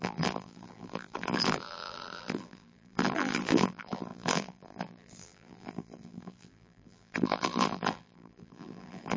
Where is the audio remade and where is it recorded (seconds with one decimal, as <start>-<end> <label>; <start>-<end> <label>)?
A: 0.0-9.2 remade